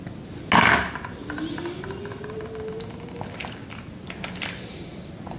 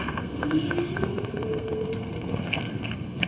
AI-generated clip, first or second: second